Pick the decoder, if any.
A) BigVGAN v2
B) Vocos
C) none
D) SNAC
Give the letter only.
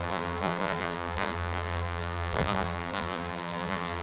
A